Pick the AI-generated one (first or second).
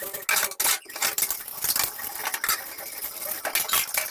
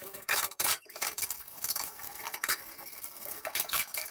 second